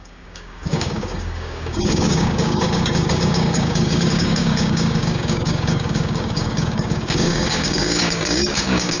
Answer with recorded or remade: remade